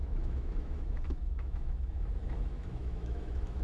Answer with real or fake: fake